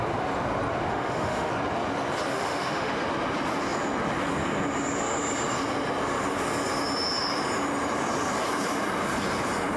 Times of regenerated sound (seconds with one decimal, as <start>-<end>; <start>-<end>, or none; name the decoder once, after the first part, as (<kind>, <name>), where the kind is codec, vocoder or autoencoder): 0.9-1.5 (autoencoder, DAC-VAE); 2.3-2.9